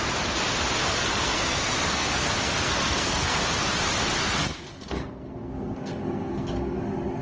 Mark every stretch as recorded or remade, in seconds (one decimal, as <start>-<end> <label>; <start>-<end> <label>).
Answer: 0.0-0.8 recorded; 0.8-3.4 remade; 3.4-4.2 recorded; 4.2-6.8 remade; 6.8-7.2 recorded